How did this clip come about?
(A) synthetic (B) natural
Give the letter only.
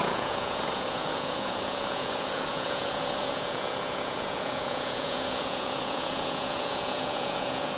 A